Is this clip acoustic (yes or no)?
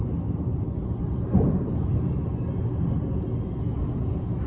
yes